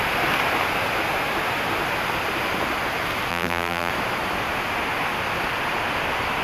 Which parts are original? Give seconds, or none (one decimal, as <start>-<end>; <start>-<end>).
0.0-3.3; 3.9-6.4